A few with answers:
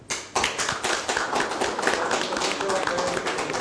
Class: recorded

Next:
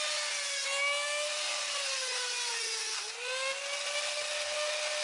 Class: recorded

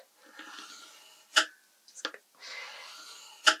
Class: recorded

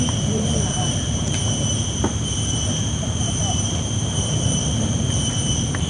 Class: remade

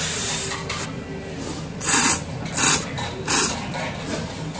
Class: recorded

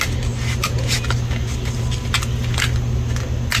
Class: recorded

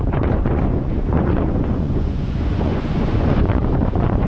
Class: remade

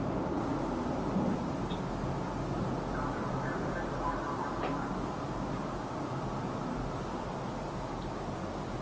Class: recorded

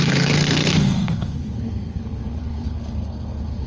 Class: remade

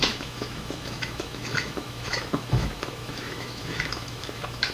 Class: remade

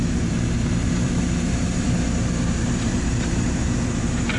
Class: remade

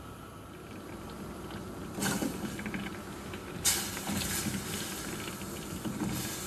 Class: recorded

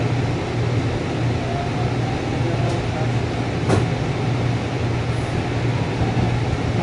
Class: recorded